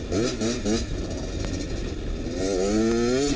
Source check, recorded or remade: recorded